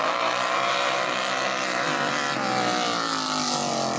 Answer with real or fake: real